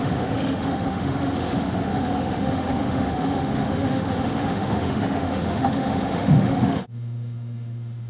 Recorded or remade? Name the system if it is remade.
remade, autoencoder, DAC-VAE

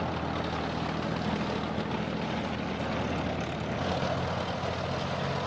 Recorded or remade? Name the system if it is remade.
recorded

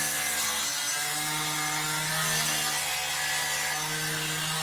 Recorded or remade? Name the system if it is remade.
recorded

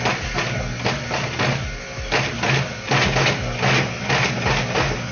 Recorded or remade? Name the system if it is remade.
recorded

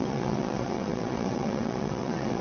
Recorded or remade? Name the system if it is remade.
remade, vocoder, WaveNeXt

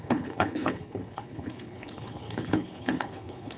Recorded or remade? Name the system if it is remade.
remade, codec, HILCodec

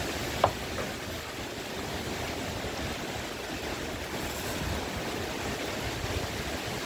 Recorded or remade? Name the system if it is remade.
recorded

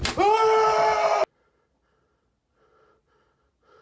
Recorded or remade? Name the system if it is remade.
recorded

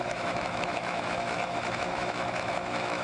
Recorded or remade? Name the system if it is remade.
remade, autoencoder, DAC-VAE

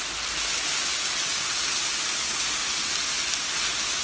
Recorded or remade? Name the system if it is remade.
recorded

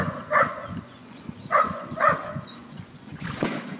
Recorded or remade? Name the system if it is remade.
remade, vocoder, Vocos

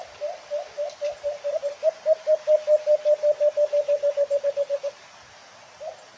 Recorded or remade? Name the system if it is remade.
recorded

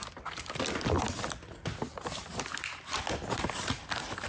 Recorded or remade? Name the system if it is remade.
recorded